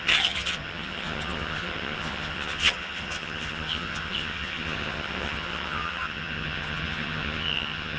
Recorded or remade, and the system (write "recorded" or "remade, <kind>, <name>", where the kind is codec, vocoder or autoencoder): remade, vocoder, HiFi-GAN